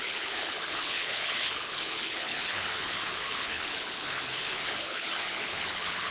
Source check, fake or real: fake